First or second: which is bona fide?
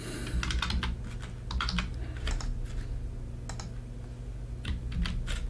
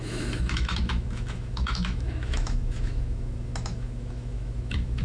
first